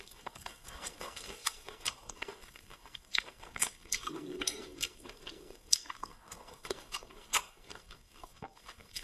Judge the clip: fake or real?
fake